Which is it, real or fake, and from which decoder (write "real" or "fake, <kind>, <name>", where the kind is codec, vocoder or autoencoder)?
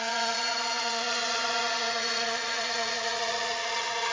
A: fake, vocoder, Vocos